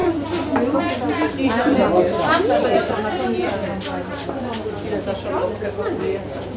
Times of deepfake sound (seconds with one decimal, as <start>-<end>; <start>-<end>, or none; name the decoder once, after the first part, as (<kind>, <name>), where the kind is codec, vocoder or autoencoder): none